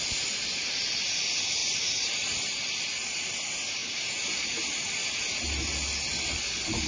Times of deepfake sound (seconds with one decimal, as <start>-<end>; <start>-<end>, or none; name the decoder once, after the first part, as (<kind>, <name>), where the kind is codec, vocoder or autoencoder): 3.8-4.8 (vocoder, BigVGAN v2)